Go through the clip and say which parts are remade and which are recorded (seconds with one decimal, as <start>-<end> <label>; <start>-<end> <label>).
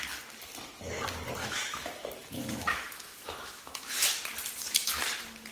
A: 0.0-1.4 recorded; 1.4-3.9 remade; 3.9-5.5 recorded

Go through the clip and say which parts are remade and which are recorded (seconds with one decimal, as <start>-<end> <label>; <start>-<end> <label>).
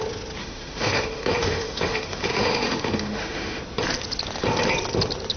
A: 0.0-0.4 recorded; 0.4-3.6 remade; 3.6-5.4 recorded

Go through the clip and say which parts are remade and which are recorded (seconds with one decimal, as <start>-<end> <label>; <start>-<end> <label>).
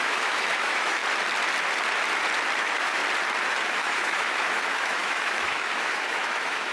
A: 0.0-1.0 remade; 1.0-2.6 recorded; 2.6-3.0 remade; 3.0-3.5 recorded; 3.5-6.7 remade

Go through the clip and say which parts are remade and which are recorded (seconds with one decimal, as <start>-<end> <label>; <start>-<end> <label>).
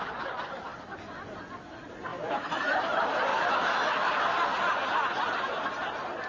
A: 0.0-2.1 recorded; 2.1-2.8 remade; 2.8-3.3 recorded; 3.3-4.1 remade; 4.1-6.3 recorded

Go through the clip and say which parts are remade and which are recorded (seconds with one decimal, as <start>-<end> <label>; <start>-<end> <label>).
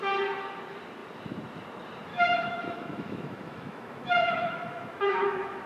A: 0.0-2.1 recorded; 2.1-5.7 remade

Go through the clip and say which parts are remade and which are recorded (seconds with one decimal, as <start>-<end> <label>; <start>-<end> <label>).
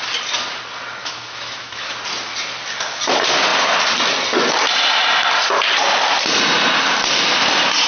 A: 0.0-1.0 recorded; 1.0-1.9 remade; 1.9-7.9 recorded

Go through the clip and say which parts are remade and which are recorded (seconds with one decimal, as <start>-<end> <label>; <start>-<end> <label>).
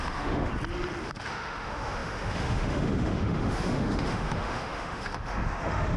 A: 0.0-0.5 remade; 0.5-1.0 recorded; 1.0-6.0 remade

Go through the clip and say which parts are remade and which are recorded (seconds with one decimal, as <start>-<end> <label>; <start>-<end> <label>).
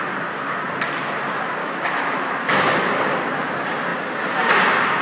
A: 0.0-1.6 recorded; 1.6-2.3 remade; 2.3-5.0 recorded